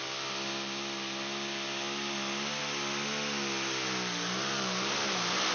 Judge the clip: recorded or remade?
recorded